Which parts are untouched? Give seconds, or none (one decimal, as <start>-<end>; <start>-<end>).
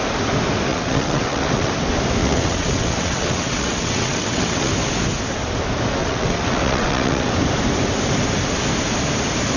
0.0-0.7; 1.7-2.2; 4.7-6.0; 7.3-9.6